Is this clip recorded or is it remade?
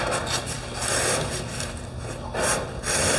remade